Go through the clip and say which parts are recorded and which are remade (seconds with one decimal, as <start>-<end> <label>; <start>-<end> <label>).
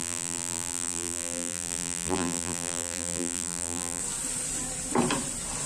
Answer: 0.0-4.0 remade; 4.0-5.7 recorded